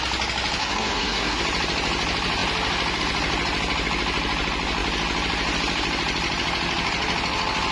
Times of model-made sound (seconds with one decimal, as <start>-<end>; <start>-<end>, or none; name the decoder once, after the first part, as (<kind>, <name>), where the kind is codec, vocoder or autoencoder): 0.6-1.4 (codec, SNAC)